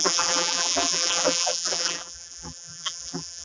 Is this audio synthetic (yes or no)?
yes